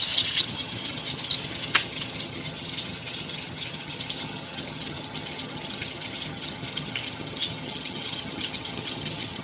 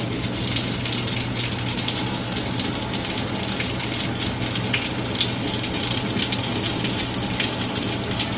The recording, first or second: second